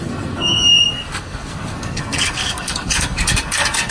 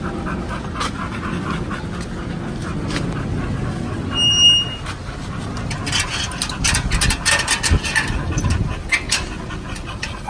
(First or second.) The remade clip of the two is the first